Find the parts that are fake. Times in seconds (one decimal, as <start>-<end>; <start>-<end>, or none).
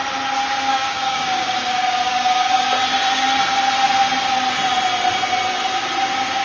0.7-2.7